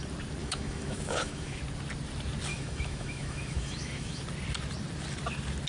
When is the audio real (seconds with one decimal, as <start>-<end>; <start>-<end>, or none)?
0.0-0.4; 1.6-2.5; 4.2-5.7